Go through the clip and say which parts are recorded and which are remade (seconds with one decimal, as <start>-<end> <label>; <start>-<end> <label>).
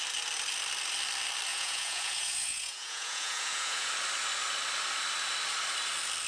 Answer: 0.0-1.5 recorded; 1.5-3.9 remade; 3.9-6.3 recorded